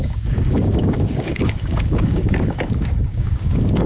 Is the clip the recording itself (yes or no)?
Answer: no